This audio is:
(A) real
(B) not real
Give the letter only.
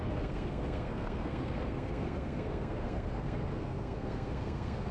B